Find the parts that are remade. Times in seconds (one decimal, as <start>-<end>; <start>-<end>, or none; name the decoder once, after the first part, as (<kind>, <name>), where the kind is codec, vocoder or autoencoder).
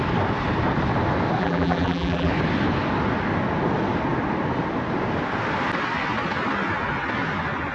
1.4-2.3 (vocoder, BigVGAN v2)